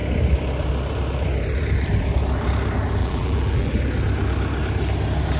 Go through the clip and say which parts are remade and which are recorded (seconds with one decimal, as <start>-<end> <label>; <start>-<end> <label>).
0.0-3.0 recorded; 3.0-3.8 remade; 3.8-5.4 recorded